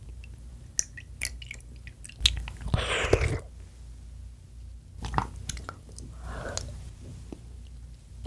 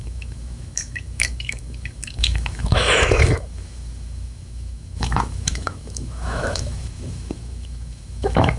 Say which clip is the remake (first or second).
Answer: second